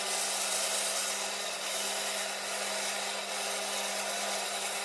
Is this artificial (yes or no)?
no